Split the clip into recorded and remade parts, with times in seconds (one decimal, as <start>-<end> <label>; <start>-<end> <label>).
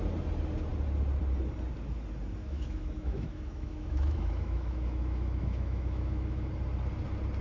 0.0-2.4 recorded; 2.4-6.5 remade; 6.5-7.4 recorded